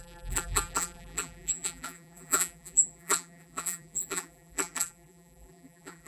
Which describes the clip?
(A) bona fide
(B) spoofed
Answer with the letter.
B